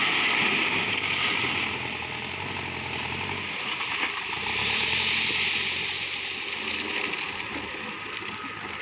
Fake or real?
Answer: real